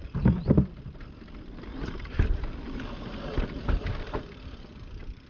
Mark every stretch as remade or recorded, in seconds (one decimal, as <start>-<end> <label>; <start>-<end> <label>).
0.0-5.3 recorded